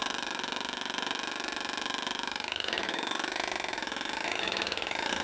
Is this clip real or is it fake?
fake